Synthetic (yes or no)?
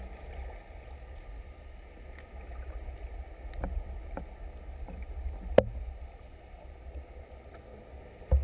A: no